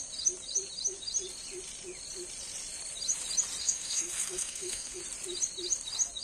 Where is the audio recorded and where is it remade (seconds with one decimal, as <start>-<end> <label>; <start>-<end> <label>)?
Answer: 0.0-3.6 recorded; 3.6-5.0 remade; 5.0-6.2 recorded